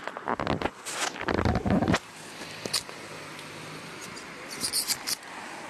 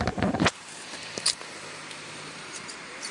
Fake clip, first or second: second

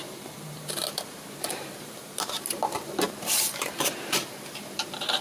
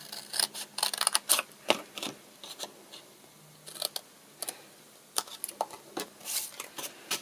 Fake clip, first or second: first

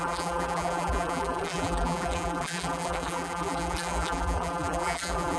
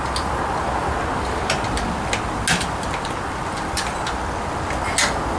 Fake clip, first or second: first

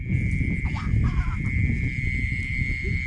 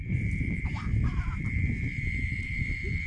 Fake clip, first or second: second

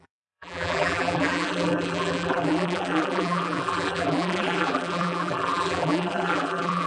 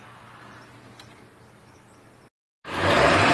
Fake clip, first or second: first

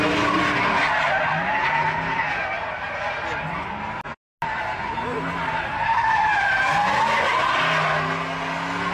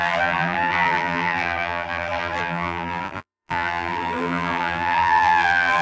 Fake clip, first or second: second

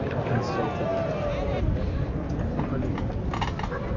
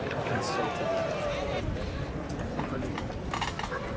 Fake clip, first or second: second